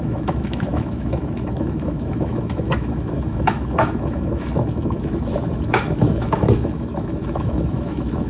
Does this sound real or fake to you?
fake